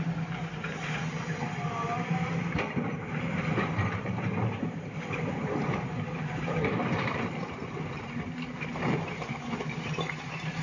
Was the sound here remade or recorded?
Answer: remade